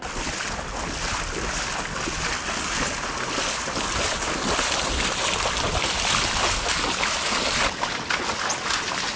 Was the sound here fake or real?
real